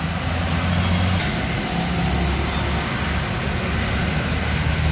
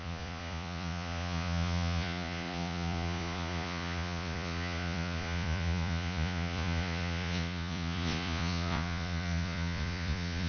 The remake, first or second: second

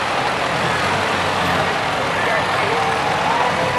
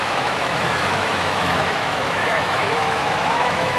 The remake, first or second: second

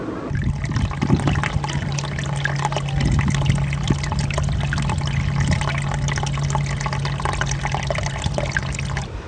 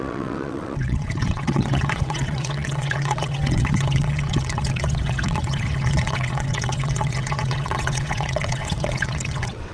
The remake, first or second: second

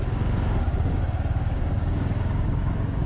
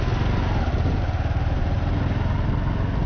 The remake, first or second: first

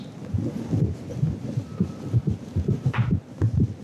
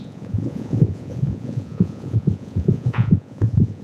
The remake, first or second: second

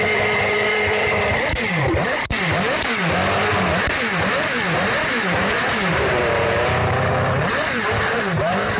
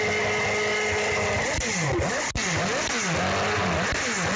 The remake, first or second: first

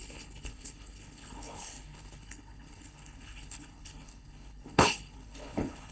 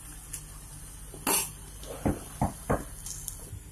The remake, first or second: first